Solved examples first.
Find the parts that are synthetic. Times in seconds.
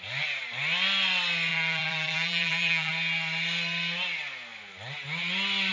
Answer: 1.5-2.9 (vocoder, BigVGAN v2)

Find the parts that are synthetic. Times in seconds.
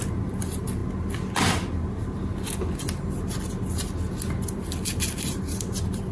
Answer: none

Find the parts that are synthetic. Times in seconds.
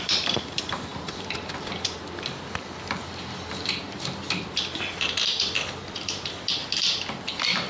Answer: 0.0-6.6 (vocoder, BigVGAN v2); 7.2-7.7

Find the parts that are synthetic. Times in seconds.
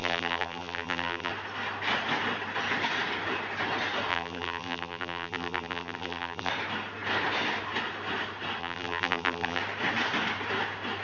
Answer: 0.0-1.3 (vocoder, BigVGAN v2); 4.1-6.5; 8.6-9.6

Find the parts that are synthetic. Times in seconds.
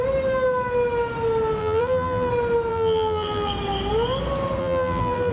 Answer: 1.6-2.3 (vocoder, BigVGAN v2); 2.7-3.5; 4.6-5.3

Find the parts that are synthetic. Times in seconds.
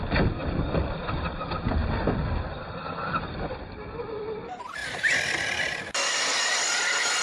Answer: 0.4-1.3 (vocoder, BigVGAN v2); 1.8-4.2; 4.8-5.7